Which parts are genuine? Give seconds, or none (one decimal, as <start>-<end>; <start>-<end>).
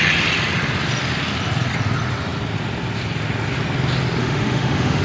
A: 0.0-4.2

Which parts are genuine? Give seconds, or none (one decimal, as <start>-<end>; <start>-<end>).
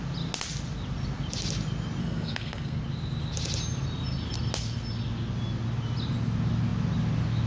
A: 0.0-2.0; 2.8-7.5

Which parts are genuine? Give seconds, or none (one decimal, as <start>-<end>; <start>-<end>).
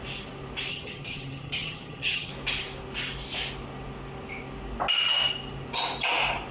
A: 0.0-0.7; 2.3-6.5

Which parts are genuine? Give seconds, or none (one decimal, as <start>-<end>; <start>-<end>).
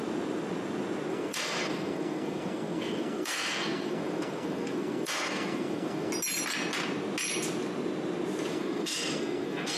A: 0.0-1.1; 6.1-8.5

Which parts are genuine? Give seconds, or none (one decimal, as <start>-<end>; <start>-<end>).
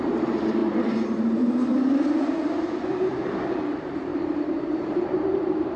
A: none